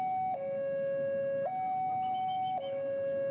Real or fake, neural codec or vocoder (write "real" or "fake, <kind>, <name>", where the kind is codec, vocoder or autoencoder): real